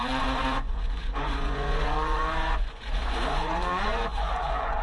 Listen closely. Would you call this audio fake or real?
fake